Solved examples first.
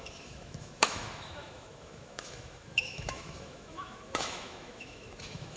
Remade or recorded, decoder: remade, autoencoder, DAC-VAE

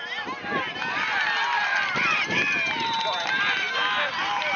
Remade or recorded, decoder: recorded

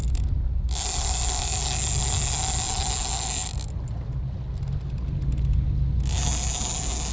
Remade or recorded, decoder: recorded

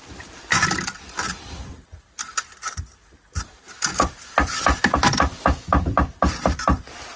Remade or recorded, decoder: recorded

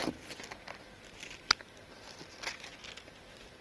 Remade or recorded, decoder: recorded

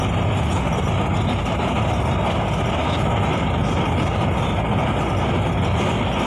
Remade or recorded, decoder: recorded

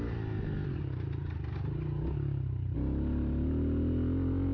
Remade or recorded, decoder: recorded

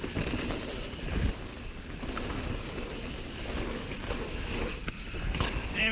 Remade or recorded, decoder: recorded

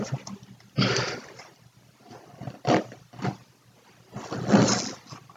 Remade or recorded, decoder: recorded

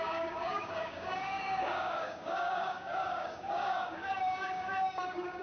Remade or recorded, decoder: remade, codec, DAC